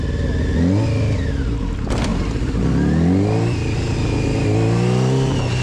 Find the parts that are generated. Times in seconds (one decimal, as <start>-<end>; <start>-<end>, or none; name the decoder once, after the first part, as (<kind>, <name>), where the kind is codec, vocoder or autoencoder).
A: none

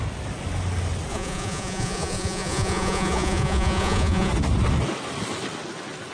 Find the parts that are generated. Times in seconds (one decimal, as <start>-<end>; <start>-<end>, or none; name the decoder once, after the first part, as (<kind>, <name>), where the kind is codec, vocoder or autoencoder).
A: 1.1-4.3 (vocoder, Vocos)

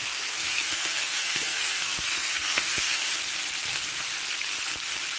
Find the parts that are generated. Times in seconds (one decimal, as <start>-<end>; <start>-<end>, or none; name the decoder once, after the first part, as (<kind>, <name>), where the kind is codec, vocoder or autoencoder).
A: 0.0-3.1 (codec, SNAC)